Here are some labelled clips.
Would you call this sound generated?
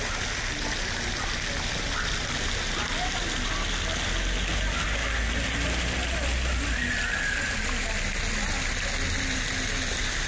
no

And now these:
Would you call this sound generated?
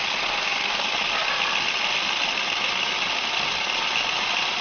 no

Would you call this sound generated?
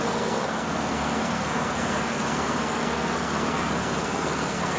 yes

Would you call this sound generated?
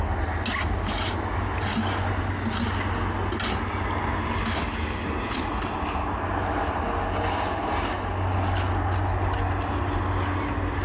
no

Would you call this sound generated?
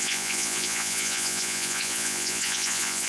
yes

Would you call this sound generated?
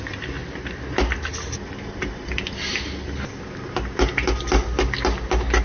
no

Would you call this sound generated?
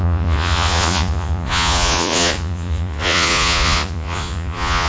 yes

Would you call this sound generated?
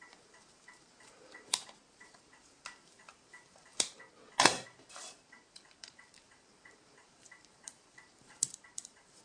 yes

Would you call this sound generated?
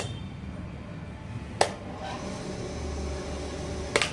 no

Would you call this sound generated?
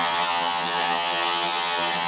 yes